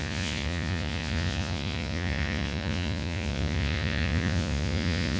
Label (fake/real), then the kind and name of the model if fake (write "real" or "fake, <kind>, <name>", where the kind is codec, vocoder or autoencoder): fake, vocoder, Vocos